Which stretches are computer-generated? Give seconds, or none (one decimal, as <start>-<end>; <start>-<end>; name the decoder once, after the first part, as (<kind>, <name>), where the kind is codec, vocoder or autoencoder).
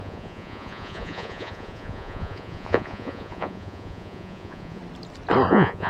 0.0-4.8 (vocoder, Vocos); 5.5-5.9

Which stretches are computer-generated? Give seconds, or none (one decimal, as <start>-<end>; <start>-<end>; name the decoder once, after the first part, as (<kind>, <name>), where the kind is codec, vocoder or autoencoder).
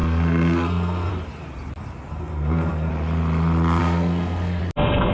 0.0-1.1 (codec, SNAC); 2.1-2.9; 3.8-4.6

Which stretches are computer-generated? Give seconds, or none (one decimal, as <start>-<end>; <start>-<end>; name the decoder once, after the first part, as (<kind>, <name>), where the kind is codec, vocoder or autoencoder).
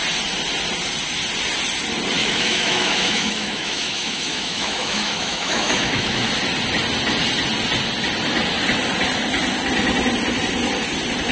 2.2-6.3 (autoencoder, DAC-VAE)